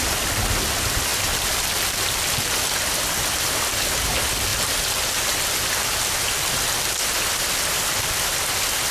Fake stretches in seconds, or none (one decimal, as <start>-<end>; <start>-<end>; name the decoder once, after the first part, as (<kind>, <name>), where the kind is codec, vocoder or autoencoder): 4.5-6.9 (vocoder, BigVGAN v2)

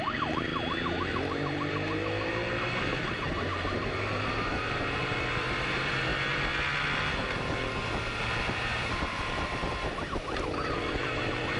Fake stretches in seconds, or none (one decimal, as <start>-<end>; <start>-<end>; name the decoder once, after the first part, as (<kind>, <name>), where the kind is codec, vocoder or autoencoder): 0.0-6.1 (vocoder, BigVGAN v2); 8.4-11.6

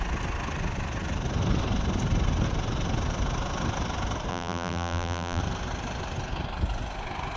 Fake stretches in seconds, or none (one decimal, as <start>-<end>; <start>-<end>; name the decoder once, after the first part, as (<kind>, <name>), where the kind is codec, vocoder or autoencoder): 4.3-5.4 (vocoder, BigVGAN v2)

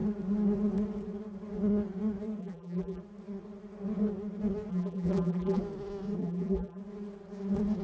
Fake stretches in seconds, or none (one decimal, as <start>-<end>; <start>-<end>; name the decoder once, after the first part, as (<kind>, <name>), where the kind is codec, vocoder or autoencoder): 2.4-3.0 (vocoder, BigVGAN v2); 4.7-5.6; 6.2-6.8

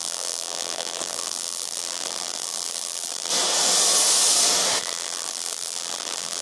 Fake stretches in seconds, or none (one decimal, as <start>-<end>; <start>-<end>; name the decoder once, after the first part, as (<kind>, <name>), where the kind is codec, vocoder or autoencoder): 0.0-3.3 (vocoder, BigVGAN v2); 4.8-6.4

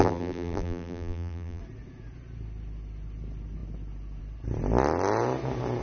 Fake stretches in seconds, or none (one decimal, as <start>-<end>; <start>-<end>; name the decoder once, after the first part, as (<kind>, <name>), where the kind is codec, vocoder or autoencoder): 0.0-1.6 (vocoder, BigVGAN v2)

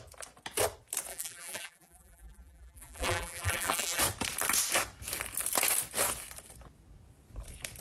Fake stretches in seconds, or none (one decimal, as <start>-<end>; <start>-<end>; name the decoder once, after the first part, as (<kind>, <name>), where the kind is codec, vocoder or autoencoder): 1.1-4.0 (vocoder, BigVGAN v2)

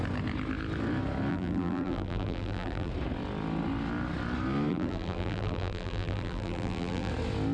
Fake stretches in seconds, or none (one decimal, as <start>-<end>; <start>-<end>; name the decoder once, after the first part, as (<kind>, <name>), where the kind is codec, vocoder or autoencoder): 1.3-2.9 (vocoder, BigVGAN v2); 4.7-7.1